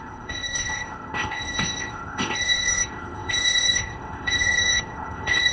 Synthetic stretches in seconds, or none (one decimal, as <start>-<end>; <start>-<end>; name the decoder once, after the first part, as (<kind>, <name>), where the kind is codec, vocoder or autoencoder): 0.0-5.5 (codec, ZipCodec)